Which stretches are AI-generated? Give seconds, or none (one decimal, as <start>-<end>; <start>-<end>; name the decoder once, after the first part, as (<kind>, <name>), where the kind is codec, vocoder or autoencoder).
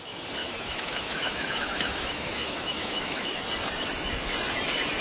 0.4-3.4 (autoencoder, DAC-VAE)